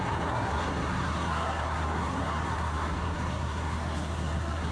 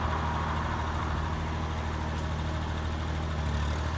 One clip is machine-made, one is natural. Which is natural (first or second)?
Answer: second